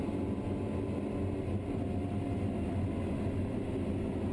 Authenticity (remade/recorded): recorded